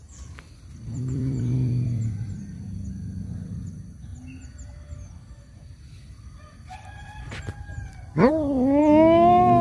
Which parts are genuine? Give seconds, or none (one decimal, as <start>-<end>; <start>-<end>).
2.6-4.1; 8.3-9.6